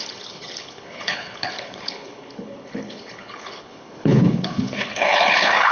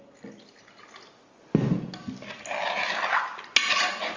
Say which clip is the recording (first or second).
second